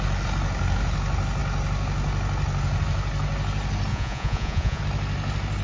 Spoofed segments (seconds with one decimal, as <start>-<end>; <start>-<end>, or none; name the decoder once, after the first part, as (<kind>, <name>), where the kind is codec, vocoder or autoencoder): 3.9-4.8 (vocoder, Vocos)